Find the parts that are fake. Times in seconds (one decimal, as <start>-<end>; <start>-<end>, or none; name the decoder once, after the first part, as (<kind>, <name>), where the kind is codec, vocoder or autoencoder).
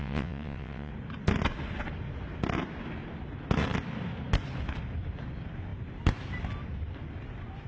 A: 0.0-0.9 (vocoder, WaveNeXt)